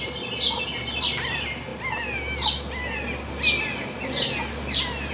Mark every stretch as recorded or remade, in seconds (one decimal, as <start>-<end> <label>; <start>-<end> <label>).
0.0-5.1 recorded

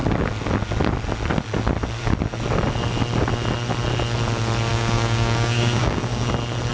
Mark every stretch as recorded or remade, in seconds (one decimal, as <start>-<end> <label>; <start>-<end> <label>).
0.0-4.7 recorded; 4.7-6.3 remade; 6.3-6.7 recorded

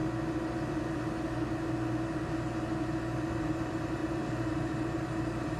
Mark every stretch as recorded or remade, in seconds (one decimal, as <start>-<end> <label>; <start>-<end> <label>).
0.0-3.4 recorded; 3.4-5.6 remade